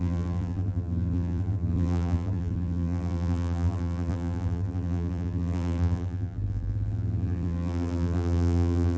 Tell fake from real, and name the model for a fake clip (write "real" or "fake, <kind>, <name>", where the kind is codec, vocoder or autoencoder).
fake, vocoder, BigVGAN v2